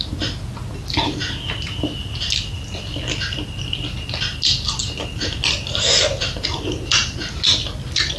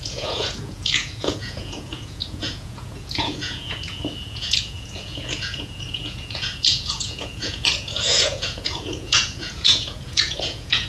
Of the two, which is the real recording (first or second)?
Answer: first